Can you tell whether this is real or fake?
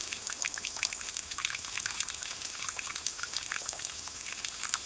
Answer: fake